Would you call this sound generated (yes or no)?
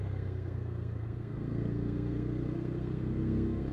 yes